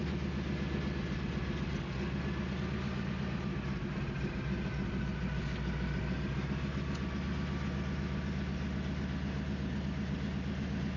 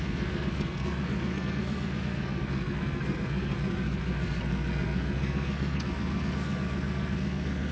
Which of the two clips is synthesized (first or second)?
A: second